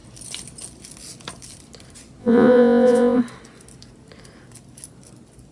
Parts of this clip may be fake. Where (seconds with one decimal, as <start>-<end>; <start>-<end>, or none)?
2.2-3.2